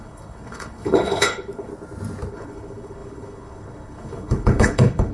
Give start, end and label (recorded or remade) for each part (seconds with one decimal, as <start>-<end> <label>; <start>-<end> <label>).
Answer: 0.0-1.7 remade; 1.7-2.3 recorded; 2.3-5.1 remade